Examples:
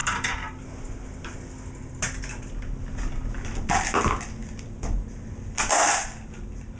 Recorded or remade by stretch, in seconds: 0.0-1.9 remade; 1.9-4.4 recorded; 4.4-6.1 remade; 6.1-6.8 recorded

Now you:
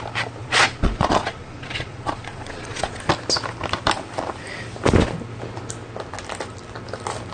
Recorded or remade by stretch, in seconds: 0.0-0.4 recorded; 0.4-3.0 remade; 3.0-7.3 recorded

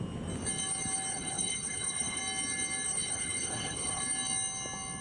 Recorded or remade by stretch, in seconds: 0.0-1.1 recorded; 1.1-2.2 remade; 2.2-2.9 recorded; 2.9-4.0 remade; 4.0-5.0 recorded

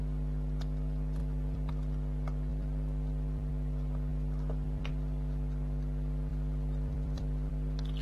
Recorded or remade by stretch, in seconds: 0.0-1.2 recorded; 1.2-1.7 remade; 1.7-2.5 recorded; 2.5-3.5 remade; 3.5-4.1 recorded; 4.1-4.9 remade; 4.9-6.3 recorded; 6.3-7.5 remade; 7.5-8.0 recorded

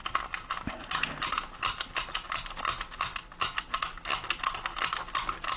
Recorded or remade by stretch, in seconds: 0.0-5.6 recorded

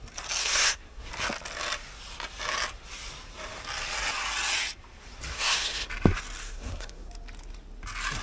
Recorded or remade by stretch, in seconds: 0.0-0.4 recorded; 0.4-1.1 remade; 1.1-5.3 recorded; 5.3-5.9 remade; 5.9-6.4 recorded; 6.4-7.1 remade; 7.1-8.2 recorded

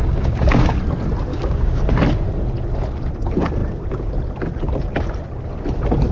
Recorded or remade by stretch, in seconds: 0.0-0.8 remade; 0.8-1.3 recorded; 1.3-1.8 remade; 1.8-6.1 recorded

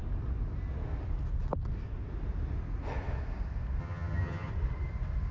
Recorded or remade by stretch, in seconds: 0.0-3.8 recorded; 3.8-4.5 remade; 4.5-5.3 recorded